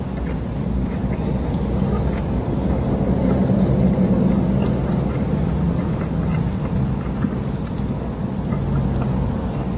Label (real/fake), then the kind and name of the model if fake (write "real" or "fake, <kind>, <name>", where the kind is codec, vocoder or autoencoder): real